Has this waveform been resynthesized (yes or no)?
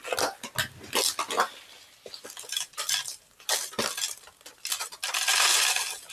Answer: no